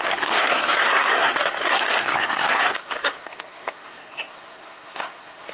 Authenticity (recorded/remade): remade